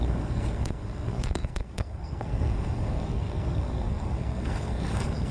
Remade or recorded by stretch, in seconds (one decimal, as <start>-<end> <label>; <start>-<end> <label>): 0.0-5.3 remade